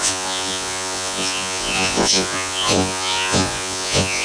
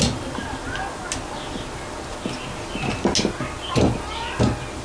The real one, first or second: second